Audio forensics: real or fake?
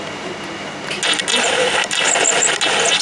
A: real